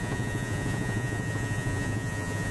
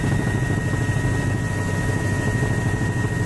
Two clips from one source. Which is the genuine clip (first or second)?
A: second